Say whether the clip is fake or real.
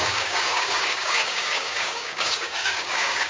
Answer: fake